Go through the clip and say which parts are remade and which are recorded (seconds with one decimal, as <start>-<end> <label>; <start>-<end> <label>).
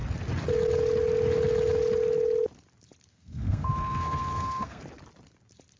0.0-3.1 recorded; 3.1-4.8 remade; 4.8-5.8 recorded